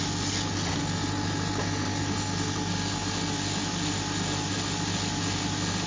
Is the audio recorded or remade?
recorded